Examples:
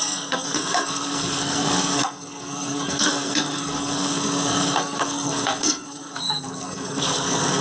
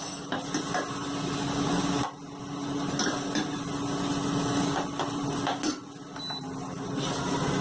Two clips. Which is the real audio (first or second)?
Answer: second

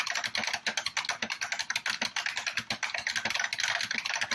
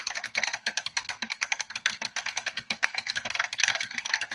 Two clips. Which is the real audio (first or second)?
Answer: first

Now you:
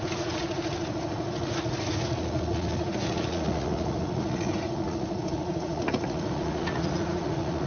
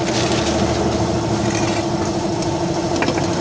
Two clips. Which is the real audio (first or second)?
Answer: second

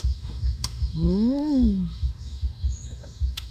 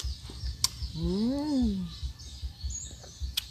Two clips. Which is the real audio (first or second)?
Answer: second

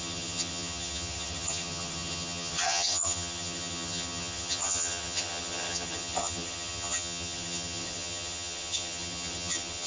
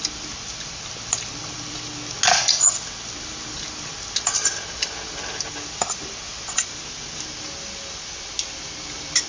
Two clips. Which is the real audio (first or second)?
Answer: second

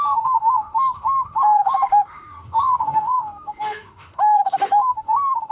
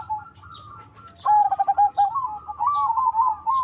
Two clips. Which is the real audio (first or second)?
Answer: second